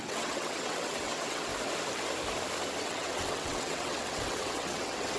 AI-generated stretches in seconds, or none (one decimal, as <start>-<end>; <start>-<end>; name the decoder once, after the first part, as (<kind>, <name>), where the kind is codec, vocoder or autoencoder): 0.0-1.5 (vocoder, WaveNeXt); 2.8-5.2